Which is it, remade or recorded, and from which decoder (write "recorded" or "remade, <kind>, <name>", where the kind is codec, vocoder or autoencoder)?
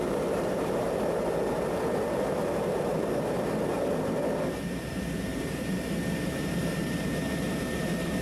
remade, vocoder, BigVGAN v2